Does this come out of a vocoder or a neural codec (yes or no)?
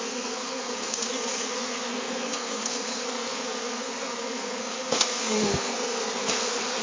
yes